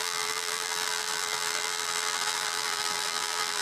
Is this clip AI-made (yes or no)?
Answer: yes